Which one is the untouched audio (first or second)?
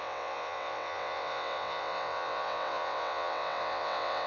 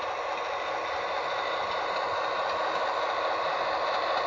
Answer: second